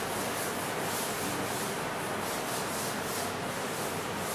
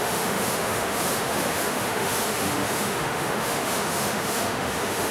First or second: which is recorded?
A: first